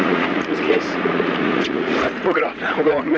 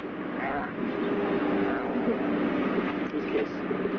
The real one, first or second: second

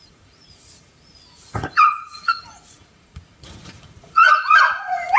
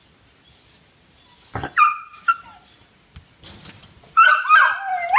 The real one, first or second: second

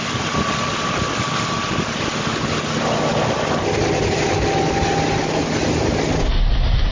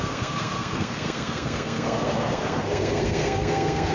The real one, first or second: first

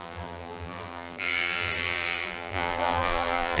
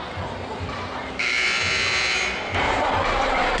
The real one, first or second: second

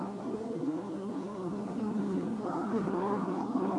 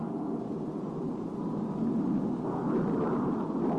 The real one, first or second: second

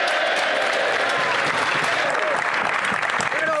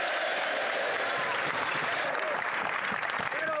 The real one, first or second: first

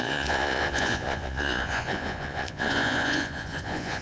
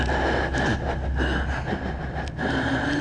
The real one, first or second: second